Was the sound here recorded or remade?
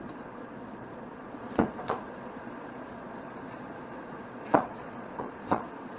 remade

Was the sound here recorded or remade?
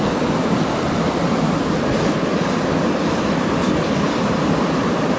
recorded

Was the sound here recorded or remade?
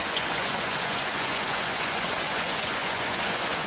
remade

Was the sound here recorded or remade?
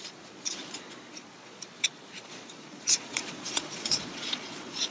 remade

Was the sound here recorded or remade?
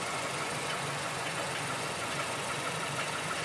remade